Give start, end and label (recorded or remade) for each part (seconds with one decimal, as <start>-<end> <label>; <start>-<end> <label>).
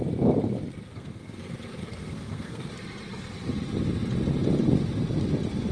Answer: 0.0-0.9 recorded; 0.9-1.4 remade; 1.4-1.8 recorded; 1.8-2.7 remade; 2.7-5.7 recorded